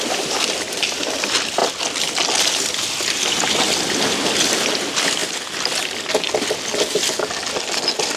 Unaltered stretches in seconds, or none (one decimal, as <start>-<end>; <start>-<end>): 0.0-8.2

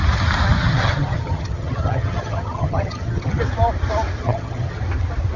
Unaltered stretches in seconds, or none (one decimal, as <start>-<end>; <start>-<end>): 0.0-0.6; 3.4-4.2; 4.8-5.4

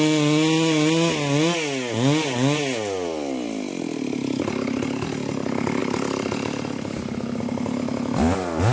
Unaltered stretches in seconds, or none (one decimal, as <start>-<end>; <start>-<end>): 0.0-5.8; 7.4-8.7

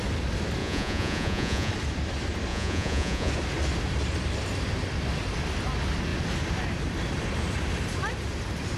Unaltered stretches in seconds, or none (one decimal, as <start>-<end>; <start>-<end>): 0.0-0.6; 1.7-2.5; 3.3-8.8